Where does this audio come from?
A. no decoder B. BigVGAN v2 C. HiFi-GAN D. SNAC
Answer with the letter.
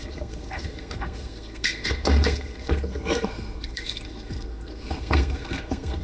D